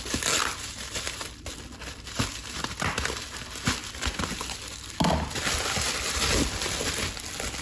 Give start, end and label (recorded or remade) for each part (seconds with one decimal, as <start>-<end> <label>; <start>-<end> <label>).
0.0-7.6 recorded